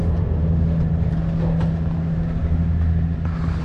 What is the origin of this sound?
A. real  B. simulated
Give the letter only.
A